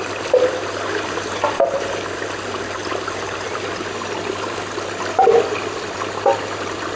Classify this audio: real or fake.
real